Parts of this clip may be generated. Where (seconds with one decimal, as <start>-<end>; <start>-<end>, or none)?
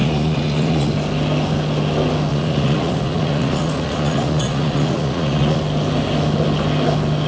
0.0-0.9; 2.3-5.6